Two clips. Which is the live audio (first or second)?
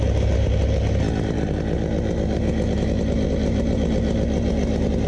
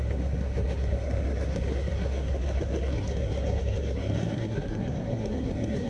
first